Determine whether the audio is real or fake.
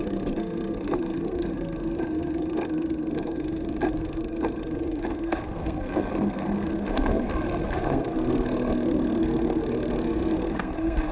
fake